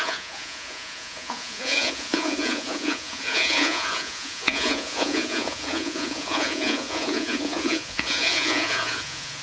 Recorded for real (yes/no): no